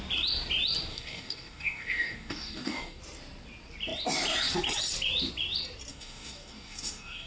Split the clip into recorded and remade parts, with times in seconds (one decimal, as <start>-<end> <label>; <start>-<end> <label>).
0.0-0.9 recorded; 0.9-3.0 remade; 3.0-5.9 recorded; 5.9-7.3 remade